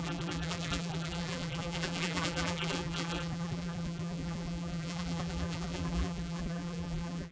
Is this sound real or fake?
fake